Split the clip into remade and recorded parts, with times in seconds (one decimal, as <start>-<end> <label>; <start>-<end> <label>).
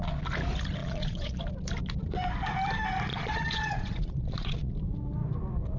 0.0-0.8 recorded; 0.8-1.4 remade; 1.4-3.1 recorded; 3.1-4.7 remade; 4.7-5.8 recorded